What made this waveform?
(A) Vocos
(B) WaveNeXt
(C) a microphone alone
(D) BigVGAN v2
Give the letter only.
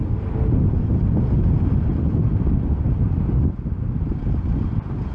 C